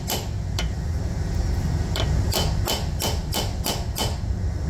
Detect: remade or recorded recorded